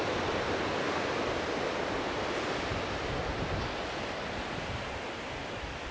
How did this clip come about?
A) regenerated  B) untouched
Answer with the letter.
B